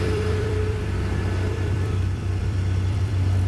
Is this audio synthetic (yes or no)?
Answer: yes